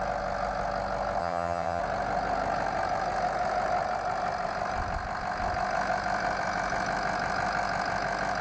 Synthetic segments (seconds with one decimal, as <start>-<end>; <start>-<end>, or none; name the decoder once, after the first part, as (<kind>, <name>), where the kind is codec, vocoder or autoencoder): 1.2-1.8 (vocoder, HiFi-GAN)